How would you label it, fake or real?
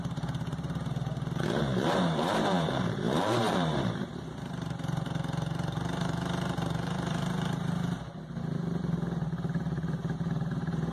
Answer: fake